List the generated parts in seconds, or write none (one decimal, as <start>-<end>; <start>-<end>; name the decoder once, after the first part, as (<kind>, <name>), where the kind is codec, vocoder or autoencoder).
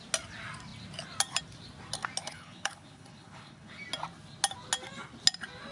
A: 2.2-3.8 (codec, HILCodec)